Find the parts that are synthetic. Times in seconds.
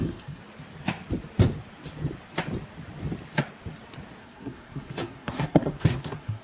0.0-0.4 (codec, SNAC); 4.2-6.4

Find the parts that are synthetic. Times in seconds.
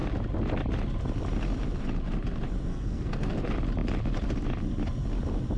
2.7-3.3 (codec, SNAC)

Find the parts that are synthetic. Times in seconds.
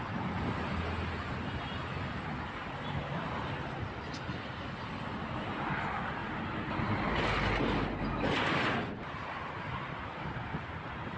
none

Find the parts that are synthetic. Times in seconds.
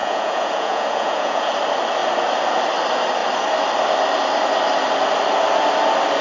0.0-1.5 (vocoder, Vocos)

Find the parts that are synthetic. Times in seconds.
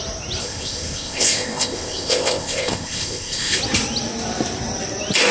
0.4-3.6 (codec, ZipCodec)